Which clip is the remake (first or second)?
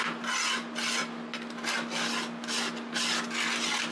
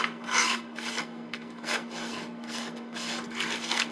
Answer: second